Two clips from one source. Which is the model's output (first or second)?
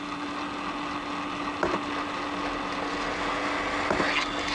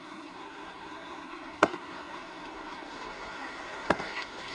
second